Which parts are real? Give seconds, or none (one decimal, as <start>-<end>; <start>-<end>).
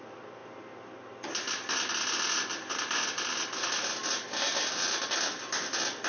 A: 0.0-6.1